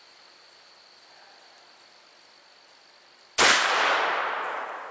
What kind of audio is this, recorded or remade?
recorded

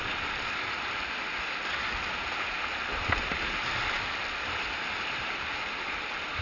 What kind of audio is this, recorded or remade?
recorded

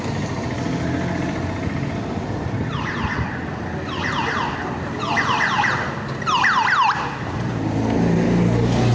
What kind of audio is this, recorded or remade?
recorded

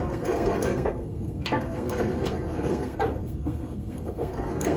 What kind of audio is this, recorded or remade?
remade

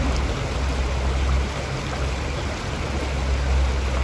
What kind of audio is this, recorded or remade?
recorded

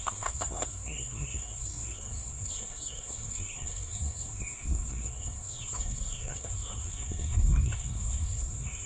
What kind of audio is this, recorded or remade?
remade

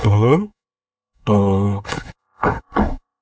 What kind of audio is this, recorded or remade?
remade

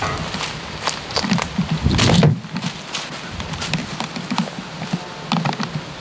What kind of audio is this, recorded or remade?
recorded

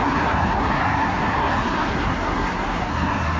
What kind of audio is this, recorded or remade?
remade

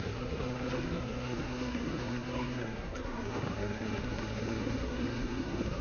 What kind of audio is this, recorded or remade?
remade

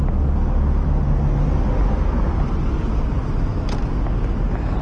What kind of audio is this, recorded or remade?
recorded